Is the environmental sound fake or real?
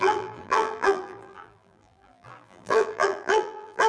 fake